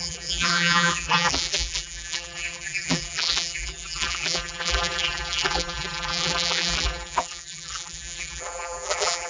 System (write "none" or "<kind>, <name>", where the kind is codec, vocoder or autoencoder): vocoder, BigVGAN v2